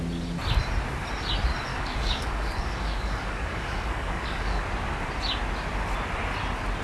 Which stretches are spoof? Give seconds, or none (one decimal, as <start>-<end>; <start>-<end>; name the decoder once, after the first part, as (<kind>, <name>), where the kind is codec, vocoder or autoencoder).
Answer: 1.7-4.6 (codec, DAC)